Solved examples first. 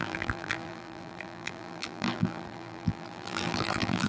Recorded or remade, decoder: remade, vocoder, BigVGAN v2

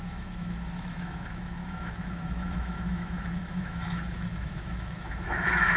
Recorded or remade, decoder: remade, autoencoder, DAC-VAE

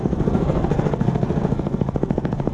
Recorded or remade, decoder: remade, codec, SNAC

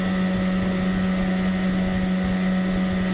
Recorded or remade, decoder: recorded